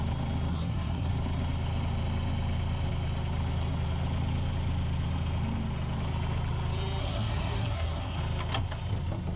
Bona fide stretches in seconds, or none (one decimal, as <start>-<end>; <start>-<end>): 0.0-0.5; 1.1-7.0; 8.2-9.4

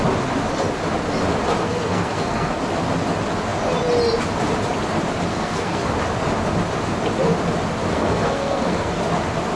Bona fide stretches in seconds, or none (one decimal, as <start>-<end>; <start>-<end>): 0.0-1.6; 2.6-5.3; 5.9-7.9; 9.0-9.6

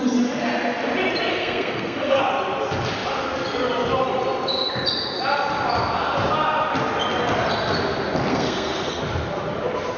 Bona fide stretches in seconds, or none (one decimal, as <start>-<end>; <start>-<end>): 0.0-1.3; 2.2-8.3; 9.0-10.0

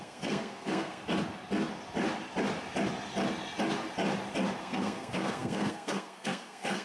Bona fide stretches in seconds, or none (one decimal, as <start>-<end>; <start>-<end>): 1.0-4.6

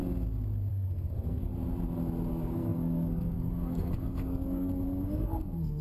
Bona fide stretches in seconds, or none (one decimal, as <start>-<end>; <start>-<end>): 0.0-0.7; 1.5-2.3

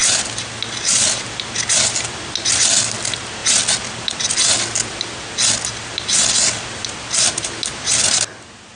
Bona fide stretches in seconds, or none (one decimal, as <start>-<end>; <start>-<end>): 0.0-8.8